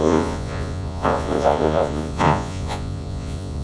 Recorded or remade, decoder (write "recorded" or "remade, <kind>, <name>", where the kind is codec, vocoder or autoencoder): remade, vocoder, Vocos